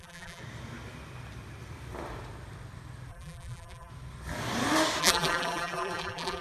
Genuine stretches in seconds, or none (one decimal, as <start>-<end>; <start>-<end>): 0.4-3.1; 3.9-5.0